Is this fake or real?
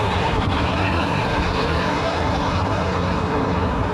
fake